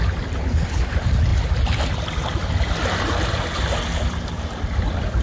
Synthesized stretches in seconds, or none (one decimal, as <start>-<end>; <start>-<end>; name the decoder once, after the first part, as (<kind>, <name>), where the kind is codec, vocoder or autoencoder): 0.0-1.3 (vocoder, BigVGAN v2); 1.8-2.4; 4.0-5.2